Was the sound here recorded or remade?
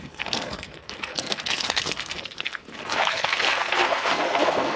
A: remade